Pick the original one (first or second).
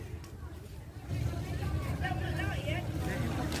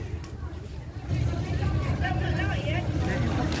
first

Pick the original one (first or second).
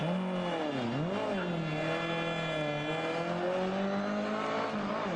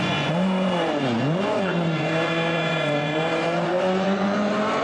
first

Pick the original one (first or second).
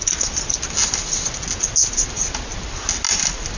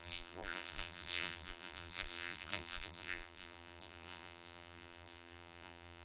first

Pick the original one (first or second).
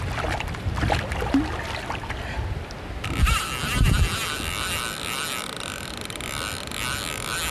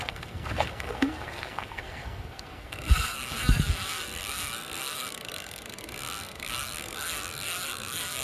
first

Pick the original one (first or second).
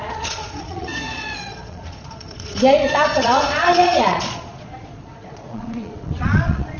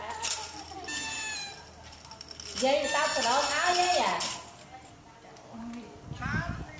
second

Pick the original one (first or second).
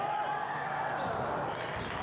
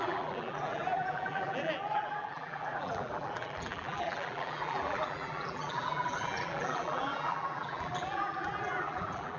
first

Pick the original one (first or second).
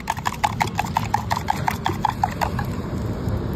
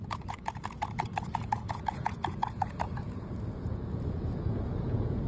first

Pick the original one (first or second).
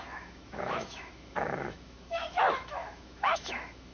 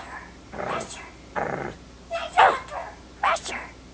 second